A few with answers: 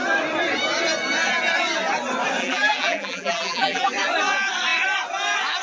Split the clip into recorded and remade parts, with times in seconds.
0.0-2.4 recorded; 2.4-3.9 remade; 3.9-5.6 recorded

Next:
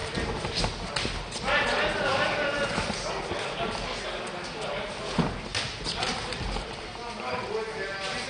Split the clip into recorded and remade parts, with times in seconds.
0.0-0.6 remade; 0.6-5.5 recorded; 5.5-7.6 remade; 7.6-8.3 recorded

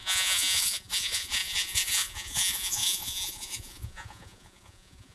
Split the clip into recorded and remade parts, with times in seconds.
0.0-5.1 remade